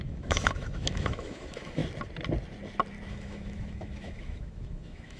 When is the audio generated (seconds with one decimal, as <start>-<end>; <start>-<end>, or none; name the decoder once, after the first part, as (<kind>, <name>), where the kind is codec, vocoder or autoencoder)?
0.0-1.8 (autoencoder, DAC-VAE); 3.1-5.2